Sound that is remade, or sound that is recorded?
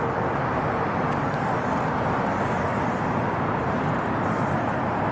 recorded